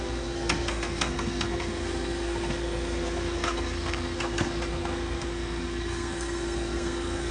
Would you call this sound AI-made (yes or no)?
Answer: yes